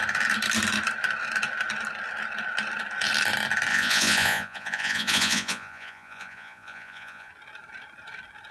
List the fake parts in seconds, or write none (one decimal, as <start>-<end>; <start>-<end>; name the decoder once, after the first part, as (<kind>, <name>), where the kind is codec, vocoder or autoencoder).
3.7-7.3 (vocoder, Vocos)

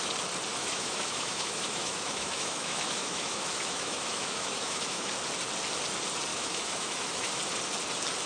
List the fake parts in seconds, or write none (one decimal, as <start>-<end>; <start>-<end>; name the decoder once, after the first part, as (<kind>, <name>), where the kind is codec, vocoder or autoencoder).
0.5-5.1 (autoencoder, DAC-VAE); 6.3-7.4

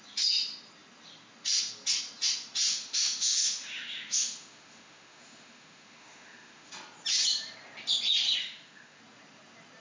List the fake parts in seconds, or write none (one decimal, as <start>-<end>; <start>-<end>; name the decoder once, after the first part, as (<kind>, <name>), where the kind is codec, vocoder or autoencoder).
2.7-6.7 (autoencoder, DAC-VAE); 8.4-9.0

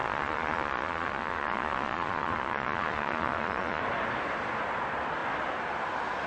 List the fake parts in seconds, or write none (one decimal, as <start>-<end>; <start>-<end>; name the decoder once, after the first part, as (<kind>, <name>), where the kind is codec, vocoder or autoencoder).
0.0-3.8 (vocoder, Vocos)

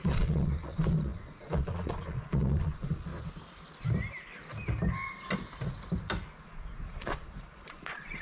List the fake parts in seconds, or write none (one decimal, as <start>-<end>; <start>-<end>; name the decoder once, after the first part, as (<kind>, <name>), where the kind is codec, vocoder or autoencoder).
0.0-3.1 (vocoder, Vocos); 6.4-8.2